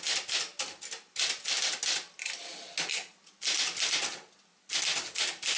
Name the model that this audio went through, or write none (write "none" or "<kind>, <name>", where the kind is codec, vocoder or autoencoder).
none